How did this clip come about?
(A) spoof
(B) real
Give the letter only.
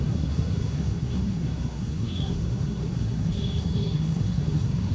A